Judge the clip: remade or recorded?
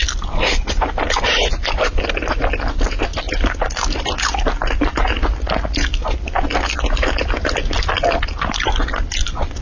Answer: recorded